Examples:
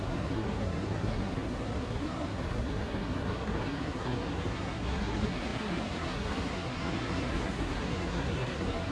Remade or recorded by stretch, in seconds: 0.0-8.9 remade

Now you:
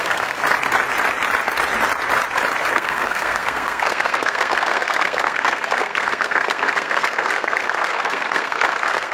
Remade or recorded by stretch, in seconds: 0.0-0.4 remade; 0.4-2.7 recorded; 2.7-9.1 remade

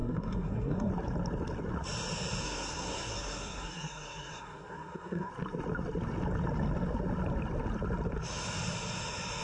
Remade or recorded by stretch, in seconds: 0.0-0.9 remade; 0.9-2.4 recorded; 2.4-5.3 remade; 5.3-9.4 recorded